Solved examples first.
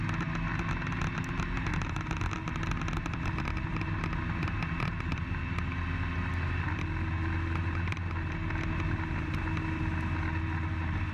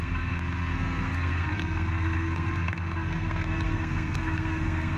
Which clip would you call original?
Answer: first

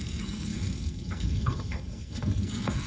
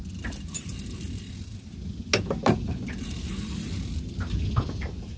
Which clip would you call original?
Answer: second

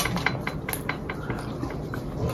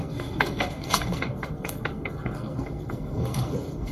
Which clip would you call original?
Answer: first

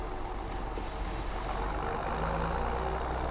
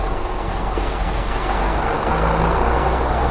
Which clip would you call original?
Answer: first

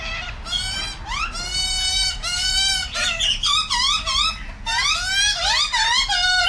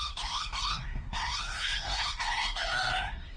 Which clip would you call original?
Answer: first